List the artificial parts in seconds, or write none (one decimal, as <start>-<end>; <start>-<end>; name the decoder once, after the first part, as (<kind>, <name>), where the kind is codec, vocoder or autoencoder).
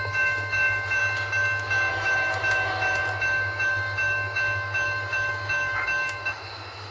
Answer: 0.0-1.0 (autoencoder, DAC-VAE); 1.9-6.9